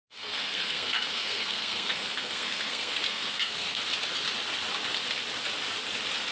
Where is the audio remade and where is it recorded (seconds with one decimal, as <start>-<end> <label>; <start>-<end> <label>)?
0.0-3.8 remade; 3.8-6.3 recorded